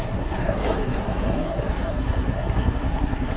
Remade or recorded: remade